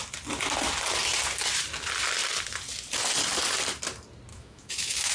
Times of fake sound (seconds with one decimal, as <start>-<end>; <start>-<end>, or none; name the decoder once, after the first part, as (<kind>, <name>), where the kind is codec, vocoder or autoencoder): 4.3-5.1 (autoencoder, DAC-VAE)